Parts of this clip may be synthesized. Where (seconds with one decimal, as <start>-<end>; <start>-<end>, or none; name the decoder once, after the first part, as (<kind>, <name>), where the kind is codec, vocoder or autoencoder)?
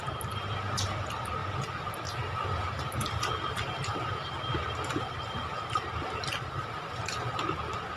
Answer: none